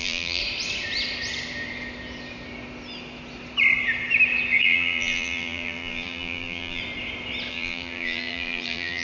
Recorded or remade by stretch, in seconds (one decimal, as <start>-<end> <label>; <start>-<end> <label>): 0.0-0.4 remade; 0.4-4.6 recorded; 4.6-6.8 remade; 6.8-7.5 recorded; 7.5-9.0 remade